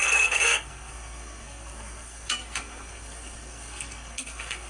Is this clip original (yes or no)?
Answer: no